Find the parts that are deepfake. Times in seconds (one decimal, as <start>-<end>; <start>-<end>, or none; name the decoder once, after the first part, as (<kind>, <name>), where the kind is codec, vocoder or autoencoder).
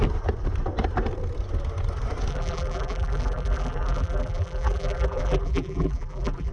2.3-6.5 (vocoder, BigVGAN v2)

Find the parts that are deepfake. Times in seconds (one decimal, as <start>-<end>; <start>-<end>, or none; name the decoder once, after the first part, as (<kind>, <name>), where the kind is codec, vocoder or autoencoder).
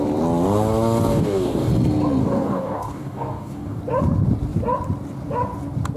1.1-1.7 (codec, DAC); 2.2-3.8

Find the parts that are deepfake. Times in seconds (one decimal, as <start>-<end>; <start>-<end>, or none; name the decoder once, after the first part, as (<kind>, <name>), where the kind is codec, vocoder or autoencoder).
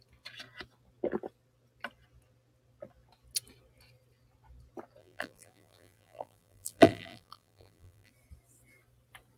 5.0-8.1 (vocoder, BigVGAN v2)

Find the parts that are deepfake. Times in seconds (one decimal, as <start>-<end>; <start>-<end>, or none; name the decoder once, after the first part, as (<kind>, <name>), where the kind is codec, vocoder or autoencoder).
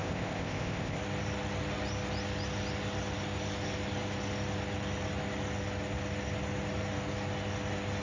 0.0-1.0 (codec, ZipCodec)